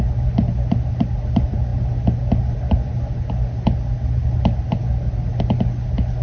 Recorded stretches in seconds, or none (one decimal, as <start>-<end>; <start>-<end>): 0.0-6.2

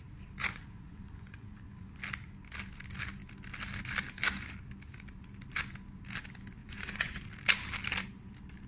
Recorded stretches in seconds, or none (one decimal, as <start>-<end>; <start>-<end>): 0.0-0.4; 2.0-6.6; 7.3-8.7

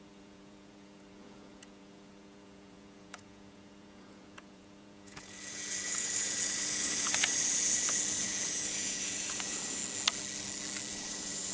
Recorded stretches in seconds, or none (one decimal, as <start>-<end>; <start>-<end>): 9.8-10.9

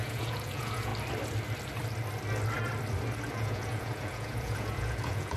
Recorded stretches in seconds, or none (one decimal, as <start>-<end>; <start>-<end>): 0.9-3.3

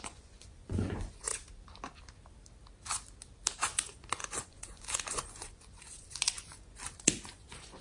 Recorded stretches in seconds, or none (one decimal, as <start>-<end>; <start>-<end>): 1.3-3.6

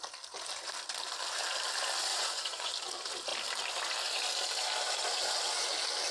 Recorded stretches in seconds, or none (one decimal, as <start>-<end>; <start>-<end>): 0.0-2.1; 2.7-6.1

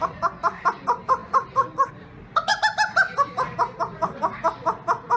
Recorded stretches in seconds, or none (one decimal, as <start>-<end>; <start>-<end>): 0.0-5.2

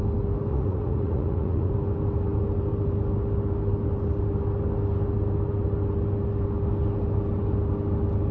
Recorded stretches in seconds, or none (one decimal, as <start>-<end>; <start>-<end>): 0.0-0.5; 1.7-8.3